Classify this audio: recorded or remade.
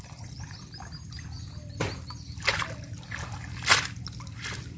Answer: recorded